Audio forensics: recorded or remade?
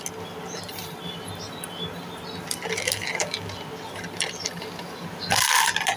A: recorded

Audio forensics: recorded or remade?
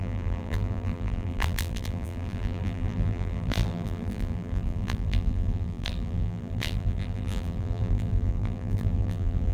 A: remade